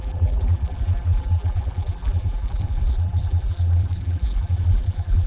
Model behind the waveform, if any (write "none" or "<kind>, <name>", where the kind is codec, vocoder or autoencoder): vocoder, BigVGAN v2